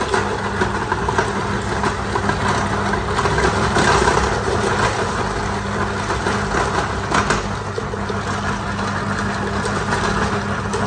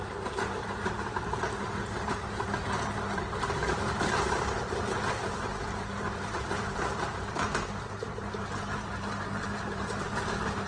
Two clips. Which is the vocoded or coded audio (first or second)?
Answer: second